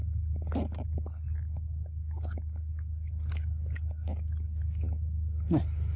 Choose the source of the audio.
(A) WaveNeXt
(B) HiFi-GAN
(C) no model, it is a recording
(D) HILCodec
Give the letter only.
C